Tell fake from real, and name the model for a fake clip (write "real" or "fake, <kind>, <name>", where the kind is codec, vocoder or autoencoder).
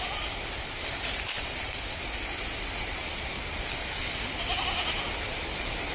real